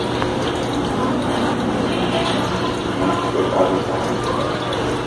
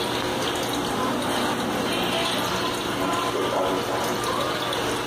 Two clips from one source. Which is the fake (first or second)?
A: first